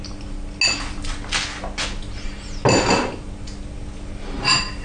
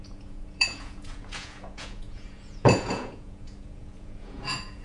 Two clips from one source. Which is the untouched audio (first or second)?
first